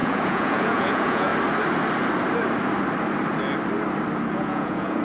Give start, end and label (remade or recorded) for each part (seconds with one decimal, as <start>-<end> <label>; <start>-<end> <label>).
0.0-1.3 remade; 1.3-4.3 recorded; 4.3-5.0 remade